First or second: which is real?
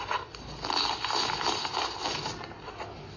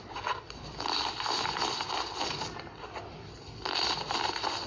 first